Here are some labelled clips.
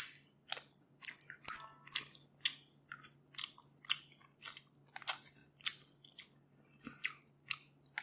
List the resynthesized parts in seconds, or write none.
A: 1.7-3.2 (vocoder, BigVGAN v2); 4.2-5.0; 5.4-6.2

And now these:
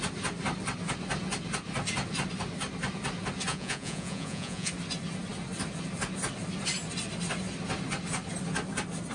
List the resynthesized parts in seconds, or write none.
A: 3.5-4.7 (vocoder, Vocos)

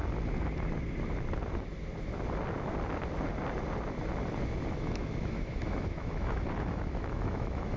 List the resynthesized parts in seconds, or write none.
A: 4.7-7.8 (autoencoder, DAC-VAE)

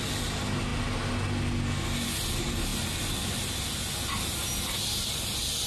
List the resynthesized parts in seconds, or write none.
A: none